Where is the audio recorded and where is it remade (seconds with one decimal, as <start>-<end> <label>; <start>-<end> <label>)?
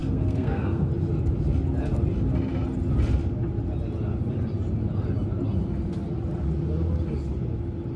0.0-0.9 remade; 0.9-8.0 recorded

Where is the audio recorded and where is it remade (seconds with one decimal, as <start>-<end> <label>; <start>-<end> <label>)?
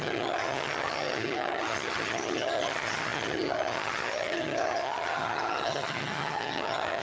0.0-7.0 remade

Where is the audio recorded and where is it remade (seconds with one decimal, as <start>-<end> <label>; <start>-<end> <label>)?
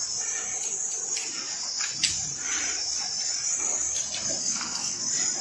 0.0-4.4 recorded; 4.4-5.0 remade; 5.0-5.4 recorded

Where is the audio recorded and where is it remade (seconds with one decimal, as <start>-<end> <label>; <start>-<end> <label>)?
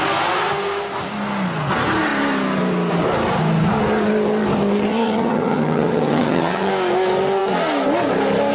0.0-4.9 recorded; 4.9-6.7 remade; 6.7-8.5 recorded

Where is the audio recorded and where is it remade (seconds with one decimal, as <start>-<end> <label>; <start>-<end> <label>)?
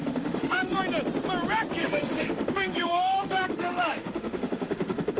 0.0-0.8 remade; 0.8-1.8 recorded; 1.8-5.2 remade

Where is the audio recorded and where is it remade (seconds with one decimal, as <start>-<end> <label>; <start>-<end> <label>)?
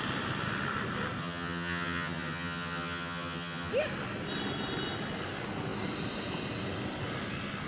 0.0-1.2 recorded; 1.2-3.7 remade; 3.7-7.7 recorded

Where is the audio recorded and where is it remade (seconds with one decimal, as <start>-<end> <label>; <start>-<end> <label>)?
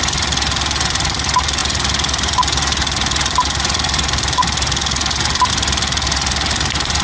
0.0-7.0 recorded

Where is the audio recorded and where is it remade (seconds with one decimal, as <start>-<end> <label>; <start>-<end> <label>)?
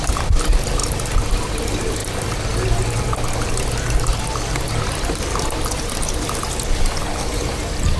0.0-8.0 recorded